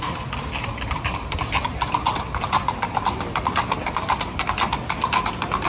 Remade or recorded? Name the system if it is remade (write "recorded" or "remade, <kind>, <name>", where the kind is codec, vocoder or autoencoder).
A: recorded